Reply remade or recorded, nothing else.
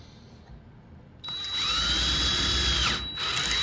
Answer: recorded